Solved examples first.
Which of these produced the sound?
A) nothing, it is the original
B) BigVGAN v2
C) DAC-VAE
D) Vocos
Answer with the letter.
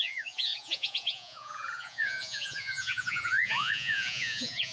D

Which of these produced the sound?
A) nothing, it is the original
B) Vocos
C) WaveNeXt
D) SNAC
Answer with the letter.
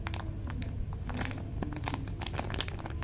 A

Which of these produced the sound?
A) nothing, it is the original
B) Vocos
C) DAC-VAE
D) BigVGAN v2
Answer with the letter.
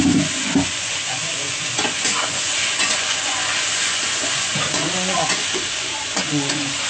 B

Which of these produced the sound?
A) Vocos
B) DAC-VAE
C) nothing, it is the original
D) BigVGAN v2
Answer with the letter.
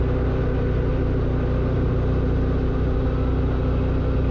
C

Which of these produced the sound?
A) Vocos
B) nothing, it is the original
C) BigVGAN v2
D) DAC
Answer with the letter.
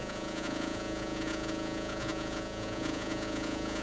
A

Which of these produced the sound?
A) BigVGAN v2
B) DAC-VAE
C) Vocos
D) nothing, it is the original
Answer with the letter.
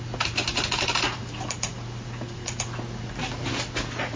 D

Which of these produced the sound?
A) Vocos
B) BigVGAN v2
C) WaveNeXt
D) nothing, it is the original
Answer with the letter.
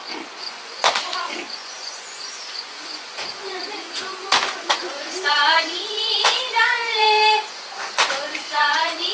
A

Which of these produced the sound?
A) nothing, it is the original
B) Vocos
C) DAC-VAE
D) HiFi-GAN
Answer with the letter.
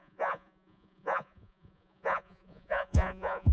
B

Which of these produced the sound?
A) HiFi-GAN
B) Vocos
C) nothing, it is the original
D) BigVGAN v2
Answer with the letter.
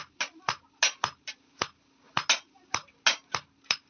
C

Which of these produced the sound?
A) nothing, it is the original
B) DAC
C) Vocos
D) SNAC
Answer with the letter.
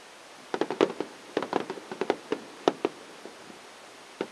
A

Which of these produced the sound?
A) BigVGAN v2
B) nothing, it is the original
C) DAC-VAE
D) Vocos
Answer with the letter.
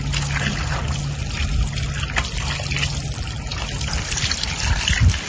B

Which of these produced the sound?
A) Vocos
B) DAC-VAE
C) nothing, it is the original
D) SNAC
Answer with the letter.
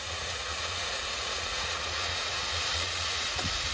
A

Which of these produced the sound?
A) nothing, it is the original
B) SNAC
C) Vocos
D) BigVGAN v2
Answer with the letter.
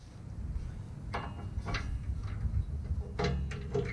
A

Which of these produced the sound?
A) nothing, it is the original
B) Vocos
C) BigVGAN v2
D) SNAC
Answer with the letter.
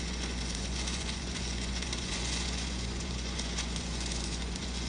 B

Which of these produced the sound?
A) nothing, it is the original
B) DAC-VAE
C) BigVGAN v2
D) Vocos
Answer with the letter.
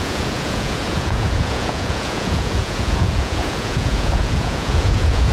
D